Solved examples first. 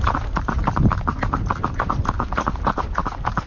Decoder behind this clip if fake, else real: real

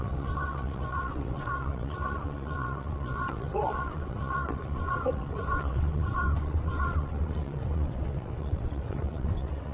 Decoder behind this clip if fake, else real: fake, vocoder, WaveNeXt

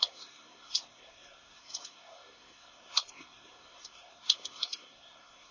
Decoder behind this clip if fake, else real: fake, codec, SNAC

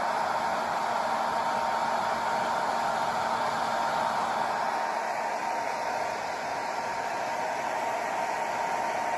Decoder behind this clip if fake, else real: real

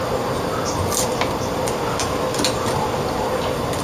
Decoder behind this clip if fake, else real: real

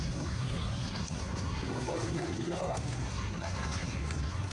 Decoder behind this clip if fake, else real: fake, codec, SNAC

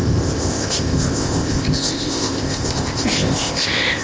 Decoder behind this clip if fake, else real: fake, codec, ZipCodec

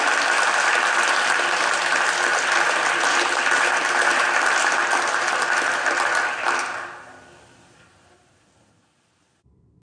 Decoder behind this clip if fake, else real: real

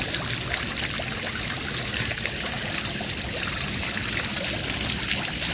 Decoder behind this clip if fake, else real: real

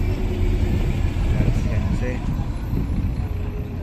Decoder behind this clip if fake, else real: real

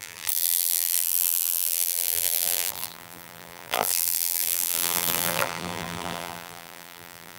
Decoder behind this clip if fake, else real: fake, vocoder, BigVGAN v2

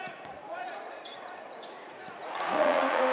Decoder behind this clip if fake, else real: fake, vocoder, Vocos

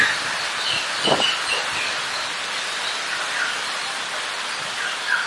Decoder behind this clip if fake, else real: fake, vocoder, BigVGAN v2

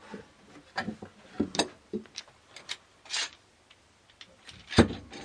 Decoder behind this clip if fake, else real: real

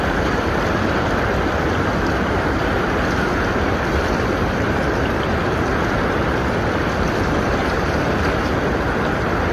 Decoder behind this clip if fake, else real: real